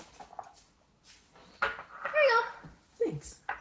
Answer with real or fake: real